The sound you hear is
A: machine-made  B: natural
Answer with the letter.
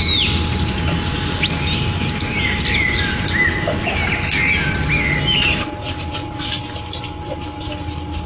B